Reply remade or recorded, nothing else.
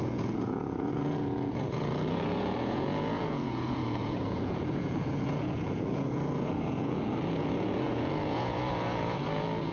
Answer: remade